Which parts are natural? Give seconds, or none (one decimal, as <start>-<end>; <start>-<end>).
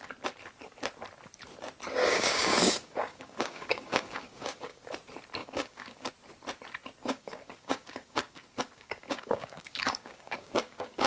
0.0-2.0; 4.9-5.4; 6.1-7.0